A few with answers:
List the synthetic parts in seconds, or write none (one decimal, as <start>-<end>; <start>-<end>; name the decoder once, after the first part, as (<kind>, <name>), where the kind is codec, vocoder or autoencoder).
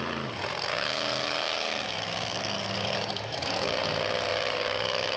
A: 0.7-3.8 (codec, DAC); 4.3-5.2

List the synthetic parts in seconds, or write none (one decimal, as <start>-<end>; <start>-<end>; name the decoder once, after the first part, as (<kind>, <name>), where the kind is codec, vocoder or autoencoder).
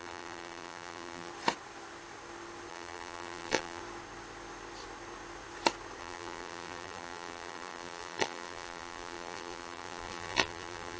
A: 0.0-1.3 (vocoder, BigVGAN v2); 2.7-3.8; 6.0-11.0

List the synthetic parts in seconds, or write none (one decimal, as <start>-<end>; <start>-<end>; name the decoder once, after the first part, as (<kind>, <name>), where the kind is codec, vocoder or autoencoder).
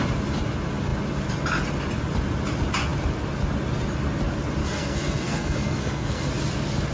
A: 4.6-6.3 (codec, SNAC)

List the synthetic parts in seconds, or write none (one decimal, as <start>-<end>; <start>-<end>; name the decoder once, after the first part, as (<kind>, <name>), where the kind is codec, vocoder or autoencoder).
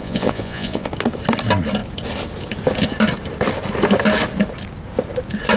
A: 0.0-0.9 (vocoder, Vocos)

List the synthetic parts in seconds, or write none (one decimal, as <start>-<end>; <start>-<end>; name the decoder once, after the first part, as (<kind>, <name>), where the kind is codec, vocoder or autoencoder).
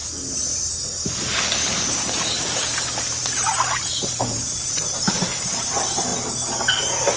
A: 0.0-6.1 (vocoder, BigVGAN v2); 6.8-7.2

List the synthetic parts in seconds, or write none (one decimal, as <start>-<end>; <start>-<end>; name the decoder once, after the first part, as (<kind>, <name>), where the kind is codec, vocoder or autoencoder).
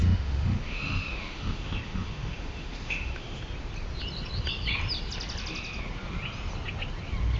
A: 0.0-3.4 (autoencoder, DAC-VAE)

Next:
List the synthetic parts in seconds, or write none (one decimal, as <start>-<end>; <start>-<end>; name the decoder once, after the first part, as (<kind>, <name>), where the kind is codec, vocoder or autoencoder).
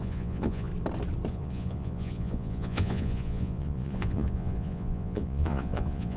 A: 0.0-0.7 (vocoder, Vocos); 1.3-6.2